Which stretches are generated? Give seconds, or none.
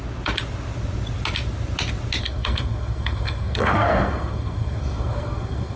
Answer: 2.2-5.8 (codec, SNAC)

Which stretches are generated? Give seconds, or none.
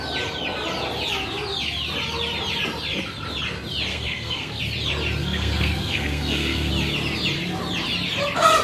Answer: 3.9-4.6 (codec, SNAC); 5.2-6.7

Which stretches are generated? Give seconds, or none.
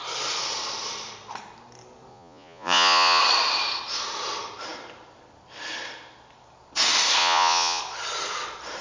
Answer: 2.1-3.2 (vocoder, Vocos); 7.2-7.8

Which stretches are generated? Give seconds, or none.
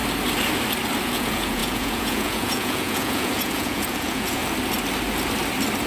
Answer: 1.0-4.4 (vocoder, Vocos)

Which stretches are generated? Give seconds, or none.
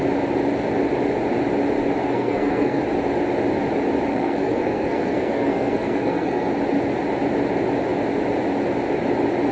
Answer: 2.0-2.8 (codec, SNAC); 4.1-6.5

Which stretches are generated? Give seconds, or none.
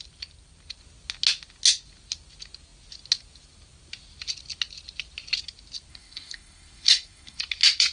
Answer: 5.9-7.4 (codec, SNAC)